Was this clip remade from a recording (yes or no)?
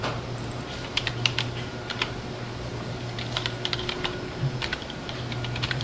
yes